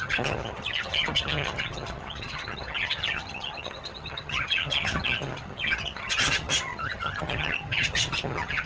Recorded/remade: remade